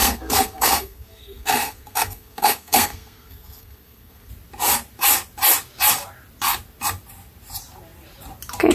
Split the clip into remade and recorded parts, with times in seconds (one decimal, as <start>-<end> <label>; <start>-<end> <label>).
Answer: 0.0-4.3 remade; 4.3-8.7 recorded